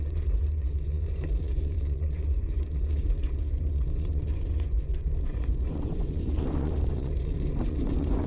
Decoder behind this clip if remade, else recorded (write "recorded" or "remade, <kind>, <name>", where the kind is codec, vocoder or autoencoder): remade, vocoder, Vocos